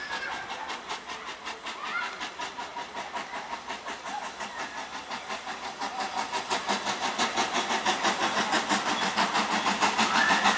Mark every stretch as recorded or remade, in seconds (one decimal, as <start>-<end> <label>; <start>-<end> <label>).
0.0-10.6 recorded